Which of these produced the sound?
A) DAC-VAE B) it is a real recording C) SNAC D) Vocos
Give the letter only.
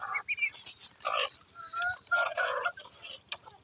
B